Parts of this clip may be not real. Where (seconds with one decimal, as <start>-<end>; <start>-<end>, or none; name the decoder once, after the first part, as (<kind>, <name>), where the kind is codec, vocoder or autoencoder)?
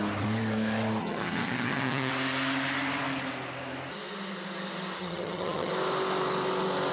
1.0-2.1 (vocoder, HiFi-GAN); 5.0-5.7